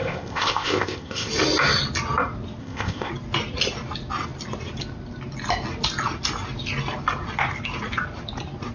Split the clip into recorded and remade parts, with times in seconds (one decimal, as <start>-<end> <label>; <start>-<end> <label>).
0.0-1.3 remade; 1.3-2.6 recorded; 2.6-3.1 remade; 3.1-8.7 recorded